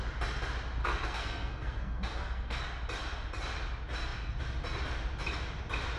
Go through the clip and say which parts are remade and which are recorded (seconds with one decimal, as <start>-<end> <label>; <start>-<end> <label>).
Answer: 0.0-0.8 recorded; 0.8-2.6 remade; 2.6-6.0 recorded